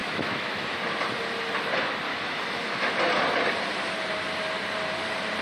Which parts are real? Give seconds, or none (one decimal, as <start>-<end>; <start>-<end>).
1.0-2.1; 2.9-5.4